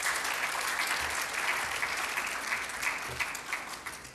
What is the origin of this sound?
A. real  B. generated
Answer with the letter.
A